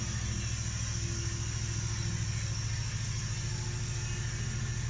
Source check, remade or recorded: recorded